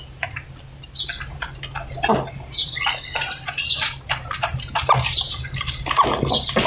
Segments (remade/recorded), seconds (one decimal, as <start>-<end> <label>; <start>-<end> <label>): 0.0-2.6 recorded; 2.6-5.8 remade; 5.8-6.7 recorded